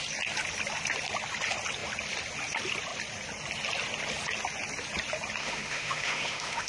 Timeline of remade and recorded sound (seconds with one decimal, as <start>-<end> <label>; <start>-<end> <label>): 0.0-5.4 recorded; 5.4-6.7 remade

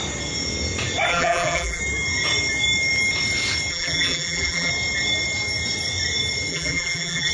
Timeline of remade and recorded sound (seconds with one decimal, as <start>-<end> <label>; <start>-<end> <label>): 0.0-1.1 recorded; 1.1-1.8 remade; 1.8-3.7 recorded; 3.7-4.7 remade; 4.7-6.5 recorded; 6.5-7.3 remade